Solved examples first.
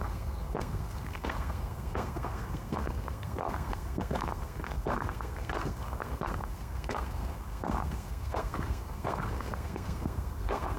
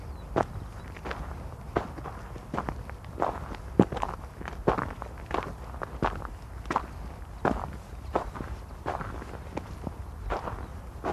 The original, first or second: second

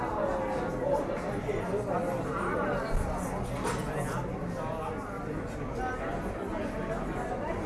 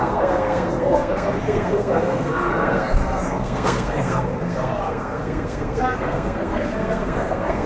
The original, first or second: first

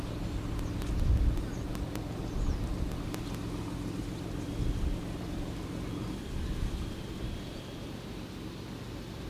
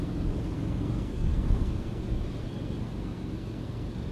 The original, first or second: first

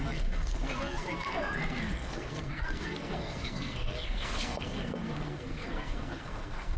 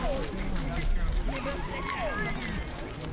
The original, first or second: second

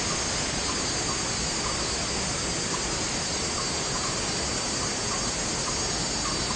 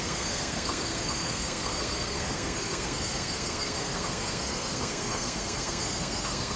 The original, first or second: first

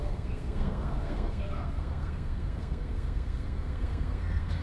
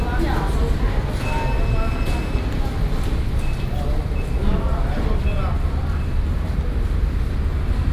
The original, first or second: second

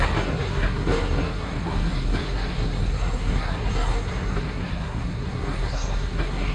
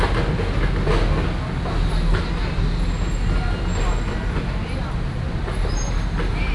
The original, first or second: second